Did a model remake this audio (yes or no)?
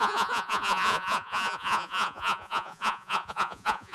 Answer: yes